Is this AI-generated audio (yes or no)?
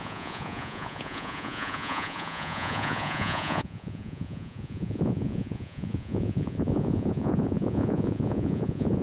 yes